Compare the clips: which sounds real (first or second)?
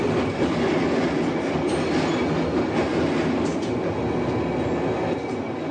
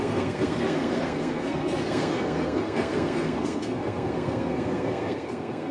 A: first